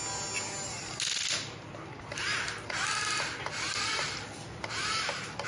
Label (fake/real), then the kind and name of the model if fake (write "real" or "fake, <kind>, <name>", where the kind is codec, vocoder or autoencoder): real